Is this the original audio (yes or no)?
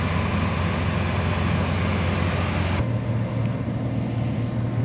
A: yes